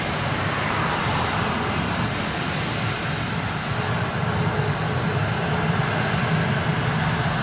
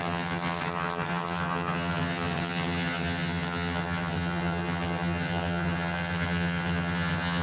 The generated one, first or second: second